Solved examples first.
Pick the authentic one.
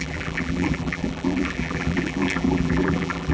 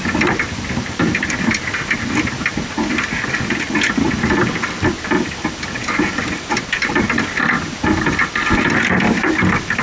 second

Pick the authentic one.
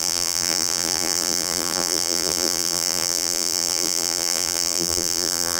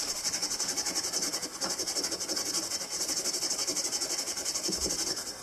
second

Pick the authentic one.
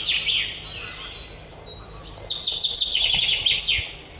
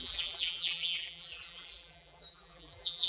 first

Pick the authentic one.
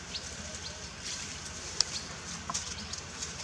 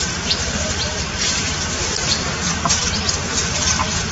first